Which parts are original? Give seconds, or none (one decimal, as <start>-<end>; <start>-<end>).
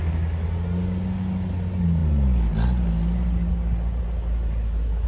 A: 0.0-5.1